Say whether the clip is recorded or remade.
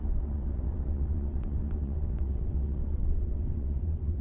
remade